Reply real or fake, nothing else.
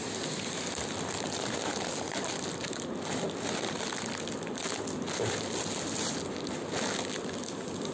real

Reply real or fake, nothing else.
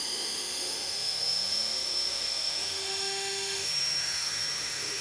fake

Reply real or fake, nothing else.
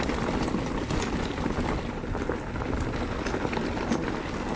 real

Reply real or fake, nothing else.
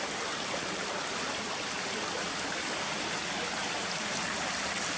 real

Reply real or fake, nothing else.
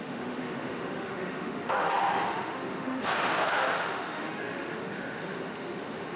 fake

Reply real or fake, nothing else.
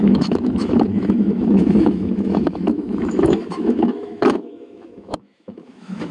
fake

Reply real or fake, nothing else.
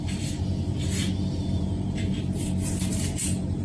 real